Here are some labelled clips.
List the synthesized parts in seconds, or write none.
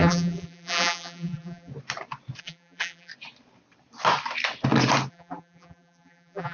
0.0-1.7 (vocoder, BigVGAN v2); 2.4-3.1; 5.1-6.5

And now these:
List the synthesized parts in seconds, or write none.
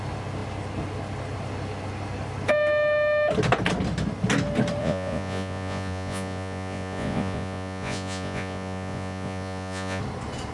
4.8-10.0 (vocoder, Vocos)